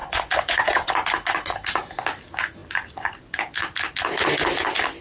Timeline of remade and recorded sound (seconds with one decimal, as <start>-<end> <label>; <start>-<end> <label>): 0.0-0.9 remade; 0.9-5.0 recorded